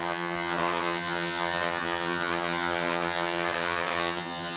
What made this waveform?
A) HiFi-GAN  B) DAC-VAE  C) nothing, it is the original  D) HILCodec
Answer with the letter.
A